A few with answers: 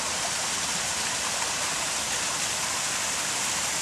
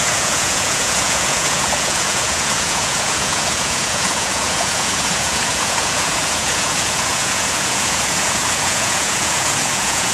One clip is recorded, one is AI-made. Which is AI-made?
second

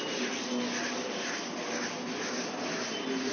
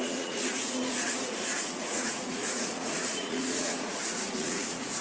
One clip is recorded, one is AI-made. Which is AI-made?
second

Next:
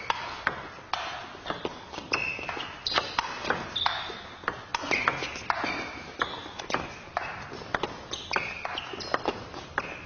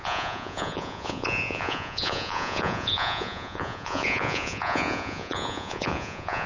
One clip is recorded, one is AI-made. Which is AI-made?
second